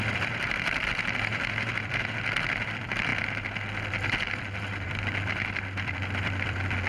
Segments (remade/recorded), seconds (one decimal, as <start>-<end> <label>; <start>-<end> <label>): 0.0-3.1 remade; 3.1-4.1 recorded; 4.1-6.9 remade